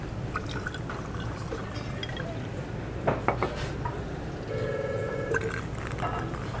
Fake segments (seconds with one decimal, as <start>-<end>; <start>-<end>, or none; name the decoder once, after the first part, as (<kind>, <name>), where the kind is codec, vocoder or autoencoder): none